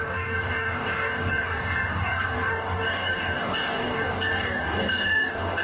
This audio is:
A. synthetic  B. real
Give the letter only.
A